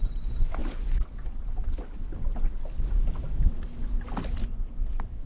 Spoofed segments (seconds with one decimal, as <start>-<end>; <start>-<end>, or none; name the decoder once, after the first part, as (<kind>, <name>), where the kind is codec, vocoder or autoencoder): none

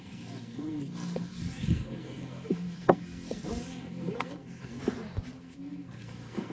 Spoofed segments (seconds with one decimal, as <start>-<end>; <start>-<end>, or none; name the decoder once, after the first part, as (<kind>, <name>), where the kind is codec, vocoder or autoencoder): 0.0-4.8 (codec, SNAC); 5.4-6.5

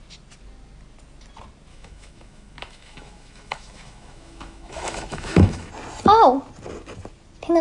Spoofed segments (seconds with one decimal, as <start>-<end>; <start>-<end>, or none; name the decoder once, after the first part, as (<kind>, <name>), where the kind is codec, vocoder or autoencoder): 1.7-5.7 (autoencoder, DAC-VAE)

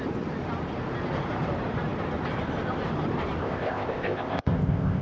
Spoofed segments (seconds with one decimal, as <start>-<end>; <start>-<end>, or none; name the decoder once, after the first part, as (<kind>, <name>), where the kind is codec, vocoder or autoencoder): 3.4-5.0 (codec, ZipCodec)

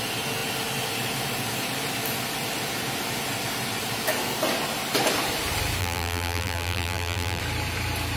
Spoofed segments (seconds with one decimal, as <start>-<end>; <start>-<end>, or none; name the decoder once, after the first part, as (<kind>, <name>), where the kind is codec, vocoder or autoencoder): 5.8-7.4 (vocoder, BigVGAN v2)

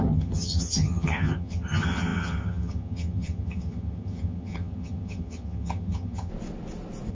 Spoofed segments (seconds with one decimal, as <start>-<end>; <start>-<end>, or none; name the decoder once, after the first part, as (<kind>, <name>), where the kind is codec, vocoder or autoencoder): 0.0-6.3 (vocoder, HiFi-GAN)

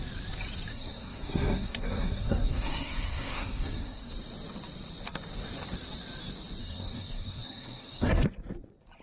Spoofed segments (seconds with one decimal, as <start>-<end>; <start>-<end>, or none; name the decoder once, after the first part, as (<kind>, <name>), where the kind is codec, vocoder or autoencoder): 0.7-4.1 (codec, SNAC); 6.6-8.2